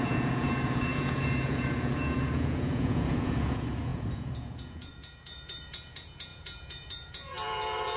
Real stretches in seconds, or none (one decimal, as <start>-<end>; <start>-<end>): none